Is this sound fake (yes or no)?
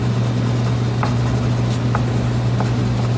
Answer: no